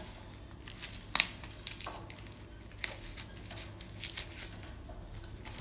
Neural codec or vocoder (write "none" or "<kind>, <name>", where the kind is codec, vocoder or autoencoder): none